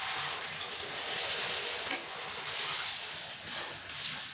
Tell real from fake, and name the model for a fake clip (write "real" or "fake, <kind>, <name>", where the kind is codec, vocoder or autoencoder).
real